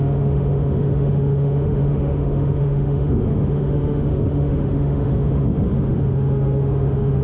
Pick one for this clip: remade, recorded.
remade